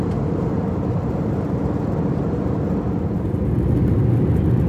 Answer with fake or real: real